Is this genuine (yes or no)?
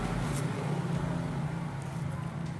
yes